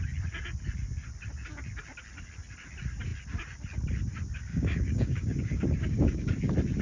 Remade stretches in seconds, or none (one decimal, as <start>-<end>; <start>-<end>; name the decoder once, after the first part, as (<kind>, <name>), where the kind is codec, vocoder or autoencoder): 4.5-6.3 (codec, DAC)